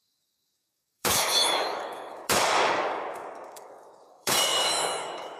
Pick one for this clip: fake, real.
fake